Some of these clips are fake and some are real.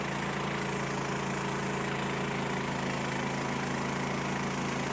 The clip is real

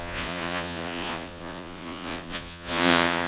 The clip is fake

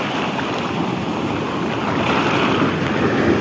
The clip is real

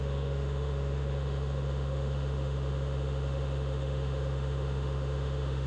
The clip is fake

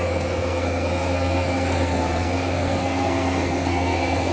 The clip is fake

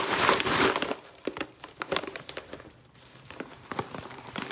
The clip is fake